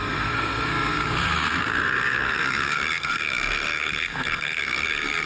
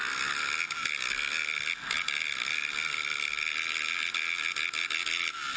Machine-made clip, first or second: first